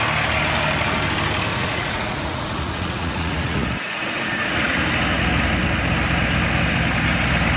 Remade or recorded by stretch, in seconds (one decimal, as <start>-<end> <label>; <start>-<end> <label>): 0.0-1.5 recorded; 1.5-4.8 remade; 4.8-7.6 recorded